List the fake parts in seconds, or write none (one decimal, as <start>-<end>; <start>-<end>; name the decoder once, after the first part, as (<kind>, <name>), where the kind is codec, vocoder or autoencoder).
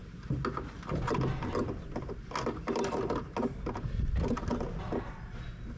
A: none